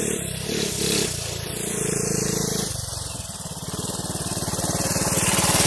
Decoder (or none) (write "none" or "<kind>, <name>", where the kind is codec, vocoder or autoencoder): vocoder, BigVGAN v2